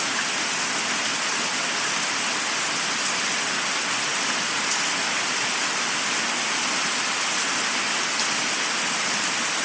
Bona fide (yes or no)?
yes